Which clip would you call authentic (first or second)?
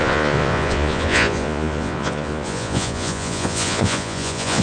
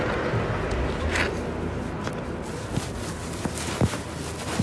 second